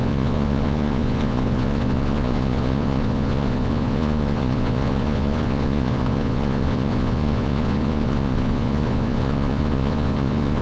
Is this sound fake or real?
fake